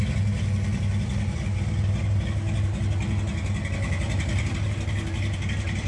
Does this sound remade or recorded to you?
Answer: recorded